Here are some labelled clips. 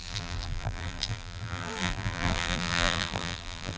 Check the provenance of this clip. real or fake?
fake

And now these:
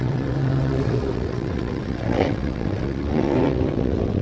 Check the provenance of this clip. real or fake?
fake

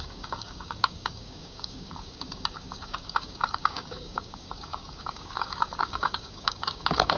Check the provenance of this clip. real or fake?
fake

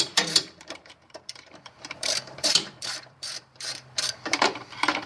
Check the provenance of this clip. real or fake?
fake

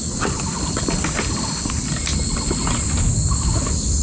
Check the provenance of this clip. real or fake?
real